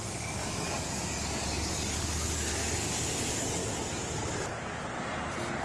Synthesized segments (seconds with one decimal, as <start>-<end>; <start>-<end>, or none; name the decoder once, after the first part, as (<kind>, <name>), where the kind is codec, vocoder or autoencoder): 0.0-3.6 (codec, DAC)